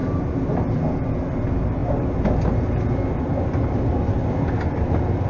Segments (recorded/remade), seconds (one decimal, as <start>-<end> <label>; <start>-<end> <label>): 0.0-5.3 recorded

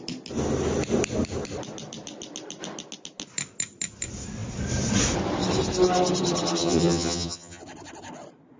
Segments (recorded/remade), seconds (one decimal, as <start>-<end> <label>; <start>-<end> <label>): 0.0-6.6 recorded; 6.6-7.6 remade; 7.6-8.6 recorded

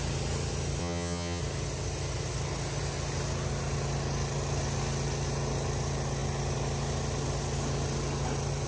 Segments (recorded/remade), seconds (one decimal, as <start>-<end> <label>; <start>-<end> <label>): 0.0-0.8 recorded; 0.8-1.4 remade; 1.4-8.7 recorded

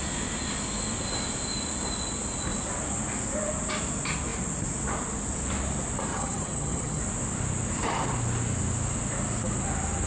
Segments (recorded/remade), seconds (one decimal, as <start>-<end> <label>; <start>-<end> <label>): 0.0-6.1 recorded; 6.1-7.0 remade; 7.0-10.1 recorded